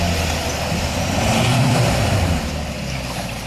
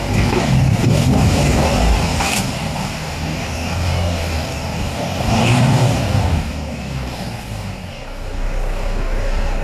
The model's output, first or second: second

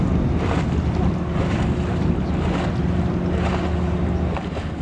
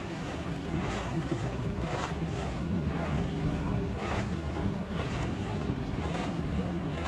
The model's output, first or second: second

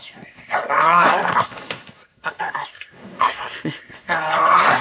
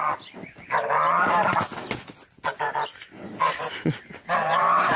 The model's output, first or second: first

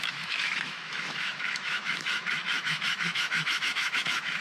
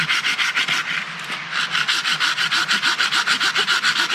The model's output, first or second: first